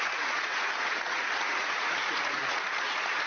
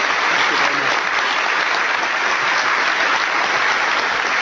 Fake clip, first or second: first